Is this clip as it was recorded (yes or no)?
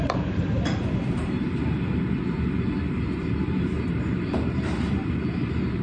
no